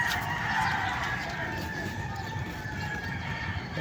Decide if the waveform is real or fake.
real